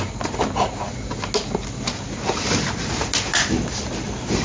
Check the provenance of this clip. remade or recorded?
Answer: recorded